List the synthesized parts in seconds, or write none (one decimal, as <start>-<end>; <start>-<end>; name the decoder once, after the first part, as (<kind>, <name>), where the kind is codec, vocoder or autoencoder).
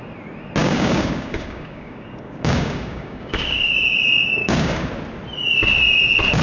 0.6-3.7 (codec, DAC); 4.4-4.9